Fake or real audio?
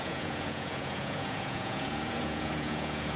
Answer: fake